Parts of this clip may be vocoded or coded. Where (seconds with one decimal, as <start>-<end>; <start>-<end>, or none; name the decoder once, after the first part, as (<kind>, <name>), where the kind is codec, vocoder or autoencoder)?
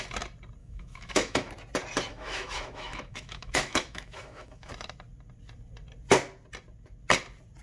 0.6-1.5 (autoencoder, DAC-VAE); 2.1-4.7